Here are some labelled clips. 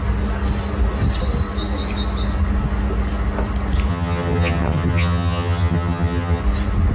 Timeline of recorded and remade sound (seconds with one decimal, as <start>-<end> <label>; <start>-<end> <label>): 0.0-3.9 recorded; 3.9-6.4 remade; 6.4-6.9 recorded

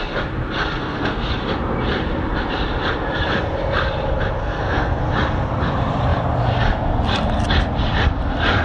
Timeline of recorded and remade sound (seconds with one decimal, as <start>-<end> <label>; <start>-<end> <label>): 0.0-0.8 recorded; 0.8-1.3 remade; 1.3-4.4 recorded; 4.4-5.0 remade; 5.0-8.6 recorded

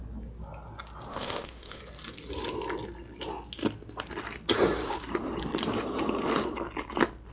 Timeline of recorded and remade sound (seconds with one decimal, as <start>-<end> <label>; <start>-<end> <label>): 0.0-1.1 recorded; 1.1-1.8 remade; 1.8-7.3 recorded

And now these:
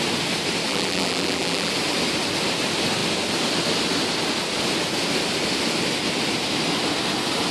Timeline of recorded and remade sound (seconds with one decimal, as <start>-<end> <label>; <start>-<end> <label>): 0.0-0.7 recorded; 0.7-1.7 remade; 1.7-7.5 recorded

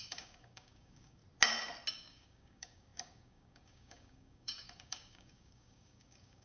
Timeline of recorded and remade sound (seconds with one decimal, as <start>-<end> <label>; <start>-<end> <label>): 0.0-1.2 remade; 1.2-1.9 recorded; 1.9-6.4 remade

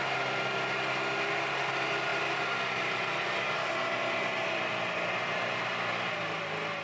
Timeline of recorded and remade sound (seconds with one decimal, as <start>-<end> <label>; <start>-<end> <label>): 0.0-6.8 recorded